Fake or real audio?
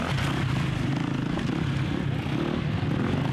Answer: real